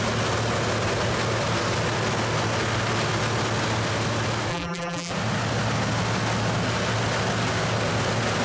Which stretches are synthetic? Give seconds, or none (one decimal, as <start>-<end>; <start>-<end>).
4.5-5.1